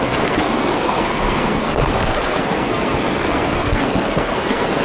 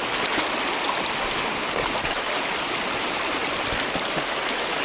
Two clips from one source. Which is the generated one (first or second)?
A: first